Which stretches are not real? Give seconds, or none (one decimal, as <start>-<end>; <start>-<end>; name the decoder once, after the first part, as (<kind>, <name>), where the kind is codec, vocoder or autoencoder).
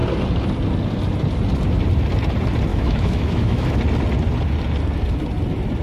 2.7-3.8 (autoencoder, DAC-VAE)